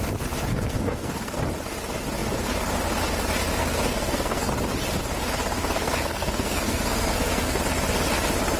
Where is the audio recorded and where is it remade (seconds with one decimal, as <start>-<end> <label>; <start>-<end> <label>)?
0.0-0.5 recorded; 0.5-1.4 remade; 1.4-3.6 recorded; 3.6-4.5 remade; 4.5-5.6 recorded; 5.6-7.6 remade; 7.6-8.6 recorded

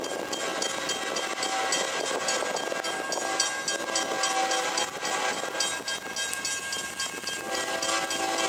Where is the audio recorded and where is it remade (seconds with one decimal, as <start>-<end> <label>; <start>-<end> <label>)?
0.0-8.5 recorded